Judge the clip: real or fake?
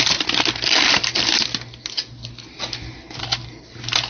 real